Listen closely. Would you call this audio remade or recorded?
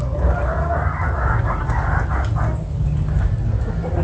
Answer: recorded